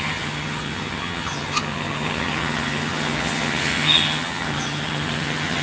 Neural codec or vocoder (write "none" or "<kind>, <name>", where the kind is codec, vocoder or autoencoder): vocoder, HiFi-GAN